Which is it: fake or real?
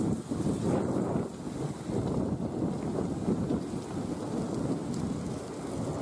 real